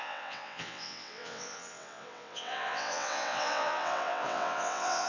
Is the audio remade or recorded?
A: remade